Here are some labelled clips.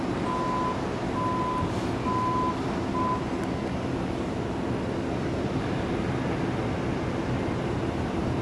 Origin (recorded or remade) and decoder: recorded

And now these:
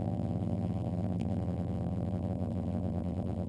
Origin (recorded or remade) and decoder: remade, vocoder, BigVGAN v2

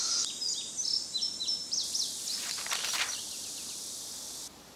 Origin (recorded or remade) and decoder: recorded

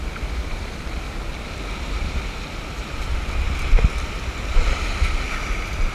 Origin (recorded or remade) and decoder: recorded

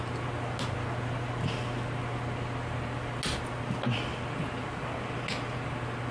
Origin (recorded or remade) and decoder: recorded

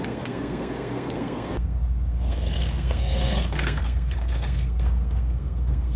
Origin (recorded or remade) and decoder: remade, codec, SNAC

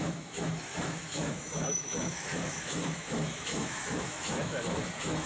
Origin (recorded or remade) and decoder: remade, autoencoder, DAC-VAE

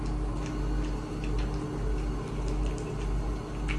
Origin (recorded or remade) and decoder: recorded